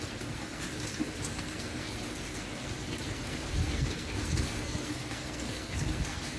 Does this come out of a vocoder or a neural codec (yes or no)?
yes